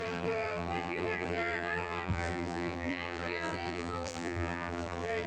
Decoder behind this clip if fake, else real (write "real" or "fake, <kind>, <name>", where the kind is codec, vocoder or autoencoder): fake, vocoder, BigVGAN v2